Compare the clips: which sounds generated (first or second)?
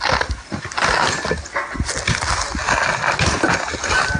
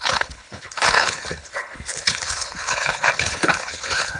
second